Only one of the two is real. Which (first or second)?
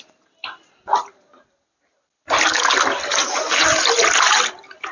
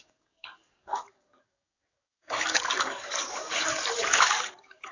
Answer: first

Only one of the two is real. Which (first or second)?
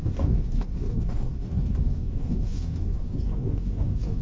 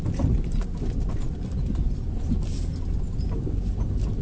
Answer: second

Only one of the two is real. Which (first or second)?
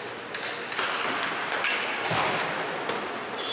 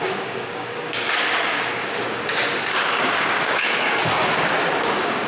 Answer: first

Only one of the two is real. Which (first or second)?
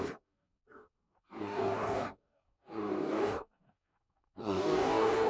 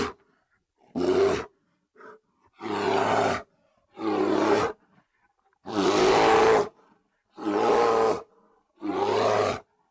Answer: second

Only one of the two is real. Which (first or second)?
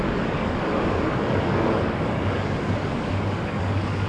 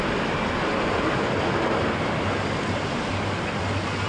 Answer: second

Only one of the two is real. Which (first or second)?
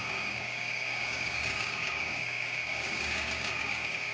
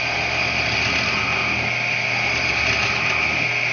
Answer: second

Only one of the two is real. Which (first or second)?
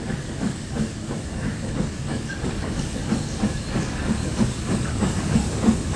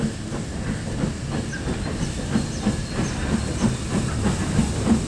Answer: second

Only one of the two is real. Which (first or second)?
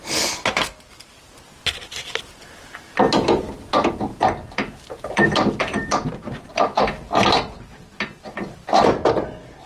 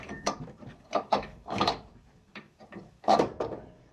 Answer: first